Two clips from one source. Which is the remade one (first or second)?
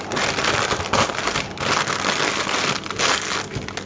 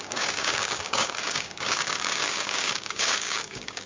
second